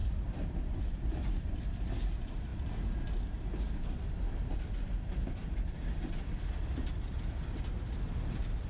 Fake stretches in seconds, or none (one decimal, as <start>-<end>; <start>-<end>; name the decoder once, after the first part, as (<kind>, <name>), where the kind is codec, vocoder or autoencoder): 0.0-1.7 (vocoder, BigVGAN v2)